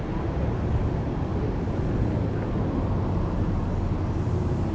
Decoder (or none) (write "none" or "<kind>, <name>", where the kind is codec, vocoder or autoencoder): none